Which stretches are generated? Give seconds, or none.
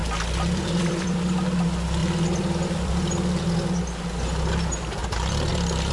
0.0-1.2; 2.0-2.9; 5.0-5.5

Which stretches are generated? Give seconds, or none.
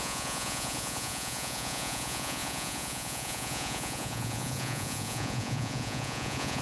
0.0-6.6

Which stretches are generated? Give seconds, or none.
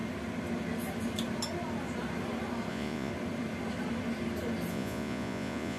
2.7-3.1; 4.7-5.8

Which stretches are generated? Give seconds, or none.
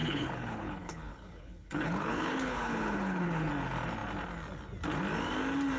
0.0-3.5